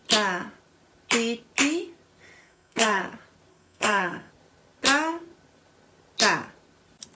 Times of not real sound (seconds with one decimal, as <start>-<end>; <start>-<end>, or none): 2.4-3.0; 3.5-4.3